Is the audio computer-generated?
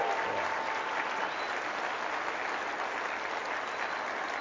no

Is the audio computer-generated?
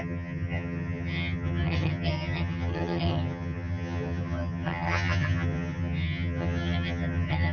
yes